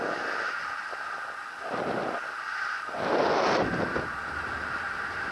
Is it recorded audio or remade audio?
recorded